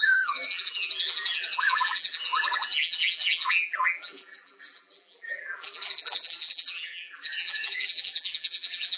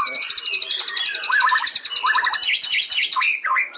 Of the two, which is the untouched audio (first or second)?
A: second